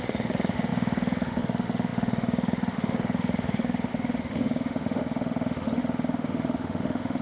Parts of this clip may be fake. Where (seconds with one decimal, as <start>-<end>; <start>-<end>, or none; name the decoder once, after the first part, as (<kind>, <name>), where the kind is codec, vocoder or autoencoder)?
0.0-7.2 (autoencoder, DAC-VAE)